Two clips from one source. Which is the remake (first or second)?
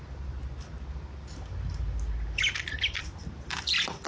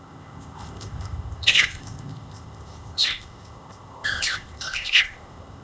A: second